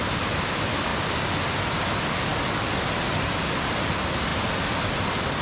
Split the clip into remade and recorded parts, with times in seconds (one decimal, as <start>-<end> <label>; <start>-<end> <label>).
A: 0.0-5.4 recorded